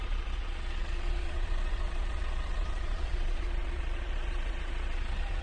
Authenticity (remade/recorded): remade